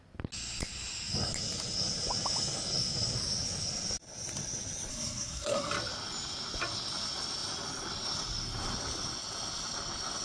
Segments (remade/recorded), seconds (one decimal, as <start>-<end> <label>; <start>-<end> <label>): 0.0-4.9 recorded; 4.9-5.7 remade; 5.7-10.2 recorded